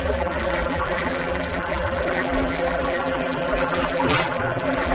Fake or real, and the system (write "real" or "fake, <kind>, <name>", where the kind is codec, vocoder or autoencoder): fake, vocoder, BigVGAN v2